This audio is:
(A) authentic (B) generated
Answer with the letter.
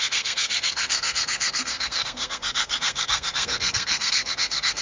B